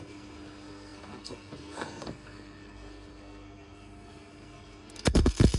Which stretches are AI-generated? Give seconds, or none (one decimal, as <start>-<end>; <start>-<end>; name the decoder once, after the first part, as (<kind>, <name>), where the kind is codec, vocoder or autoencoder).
0.0-5.6 (codec, SNAC)